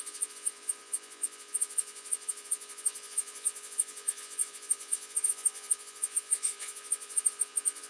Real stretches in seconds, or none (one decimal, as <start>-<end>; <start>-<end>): none